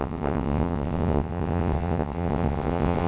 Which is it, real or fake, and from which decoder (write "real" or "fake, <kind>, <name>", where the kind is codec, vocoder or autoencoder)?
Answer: fake, vocoder, WaveNeXt